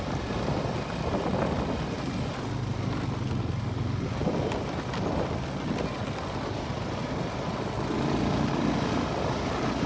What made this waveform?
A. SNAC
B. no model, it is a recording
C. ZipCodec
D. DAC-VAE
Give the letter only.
B